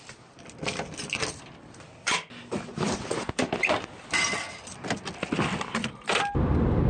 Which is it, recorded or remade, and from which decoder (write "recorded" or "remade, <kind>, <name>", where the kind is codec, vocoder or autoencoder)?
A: recorded